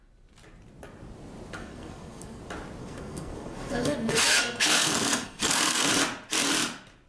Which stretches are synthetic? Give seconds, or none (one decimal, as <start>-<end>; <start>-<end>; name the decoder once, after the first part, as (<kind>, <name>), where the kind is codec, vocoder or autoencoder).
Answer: 1.6-2.4 (codec, SNAC); 2.8-5.9